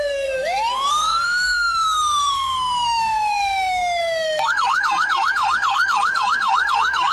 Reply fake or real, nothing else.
fake